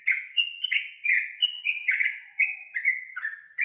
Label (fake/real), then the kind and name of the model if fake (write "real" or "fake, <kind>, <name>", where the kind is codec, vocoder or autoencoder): fake, vocoder, Vocos